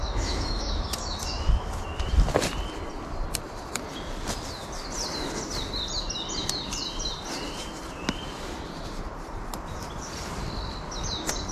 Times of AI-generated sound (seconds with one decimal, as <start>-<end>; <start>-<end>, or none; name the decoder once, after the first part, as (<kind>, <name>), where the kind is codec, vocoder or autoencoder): 0.0-1.8 (autoencoder, DAC-VAE)